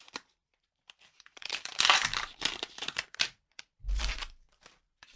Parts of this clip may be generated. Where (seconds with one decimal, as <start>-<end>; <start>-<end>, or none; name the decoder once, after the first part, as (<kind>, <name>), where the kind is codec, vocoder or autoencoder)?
0.0-5.2 (vocoder, BigVGAN v2)